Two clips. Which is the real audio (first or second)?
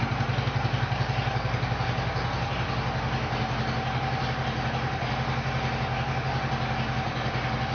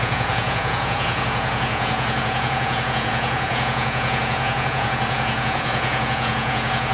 first